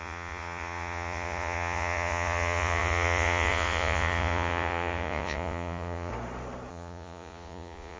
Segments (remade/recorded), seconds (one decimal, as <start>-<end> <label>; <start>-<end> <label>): 0.0-6.1 remade; 6.1-6.7 recorded; 6.7-8.0 remade